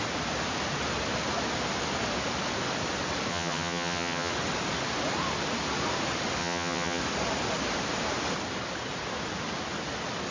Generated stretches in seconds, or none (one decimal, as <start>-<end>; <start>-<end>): 3.3-4.3; 6.4-7.0